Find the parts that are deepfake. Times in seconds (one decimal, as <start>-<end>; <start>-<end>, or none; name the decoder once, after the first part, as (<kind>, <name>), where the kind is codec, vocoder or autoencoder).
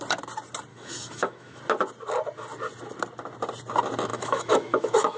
0.7-1.6 (autoencoder, DAC-VAE); 4.1-5.2